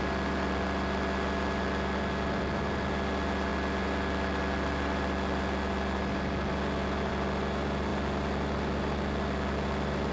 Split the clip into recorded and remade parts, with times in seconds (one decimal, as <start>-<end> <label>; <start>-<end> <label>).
0.0-10.1 recorded